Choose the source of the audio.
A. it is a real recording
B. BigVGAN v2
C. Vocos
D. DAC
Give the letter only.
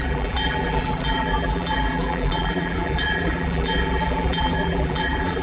B